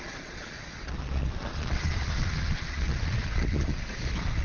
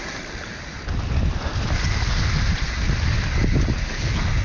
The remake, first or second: first